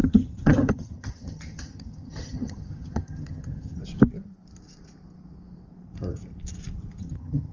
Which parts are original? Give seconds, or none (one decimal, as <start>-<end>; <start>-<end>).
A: 3.8-7.0